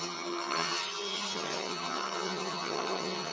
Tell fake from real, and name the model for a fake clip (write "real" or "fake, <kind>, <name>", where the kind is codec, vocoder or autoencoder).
fake, vocoder, HiFi-GAN